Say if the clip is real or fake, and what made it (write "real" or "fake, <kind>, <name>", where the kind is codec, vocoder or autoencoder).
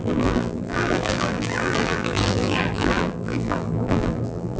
fake, vocoder, BigVGAN v2